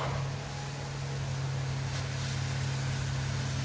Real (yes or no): yes